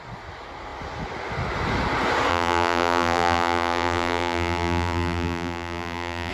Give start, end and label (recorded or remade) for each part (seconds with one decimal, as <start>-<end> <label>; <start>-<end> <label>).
0.0-2.3 recorded; 2.3-6.3 remade